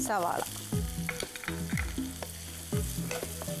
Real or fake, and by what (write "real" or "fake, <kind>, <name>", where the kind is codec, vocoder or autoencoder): real